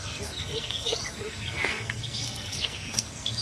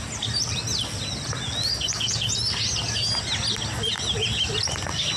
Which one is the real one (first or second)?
second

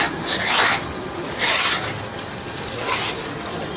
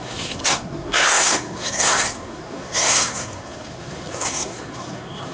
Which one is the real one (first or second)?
first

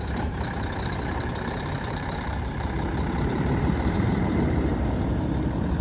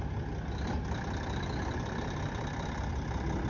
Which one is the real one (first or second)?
second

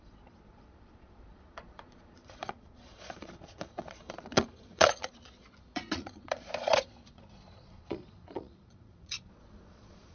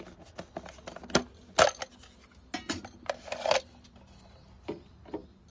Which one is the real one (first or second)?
second